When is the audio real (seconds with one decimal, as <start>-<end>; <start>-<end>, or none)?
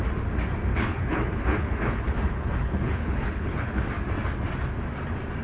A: 0.0-0.7; 3.9-5.4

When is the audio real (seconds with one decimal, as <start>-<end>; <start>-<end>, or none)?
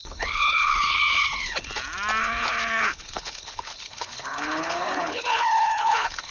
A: 1.7-2.2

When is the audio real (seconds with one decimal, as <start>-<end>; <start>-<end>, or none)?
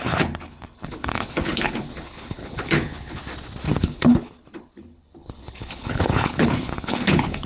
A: 3.2-3.8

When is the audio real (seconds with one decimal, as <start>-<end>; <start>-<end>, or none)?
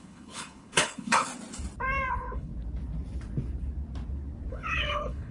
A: 1.3-2.1; 2.5-4.5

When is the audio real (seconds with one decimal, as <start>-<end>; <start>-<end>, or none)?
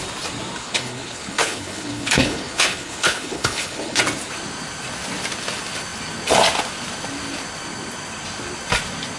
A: 0.0-0.6; 4.0-9.2